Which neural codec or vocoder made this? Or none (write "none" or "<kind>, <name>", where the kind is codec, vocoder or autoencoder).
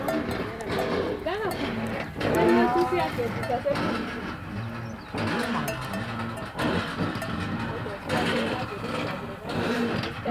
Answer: none